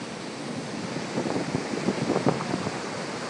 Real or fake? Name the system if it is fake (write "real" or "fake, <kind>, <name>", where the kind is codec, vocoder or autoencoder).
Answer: real